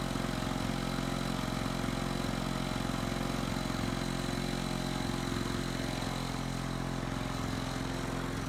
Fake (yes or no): no